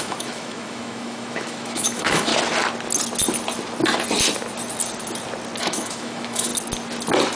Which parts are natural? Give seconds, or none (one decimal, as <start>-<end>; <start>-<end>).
2.3-5.6; 6.5-7.4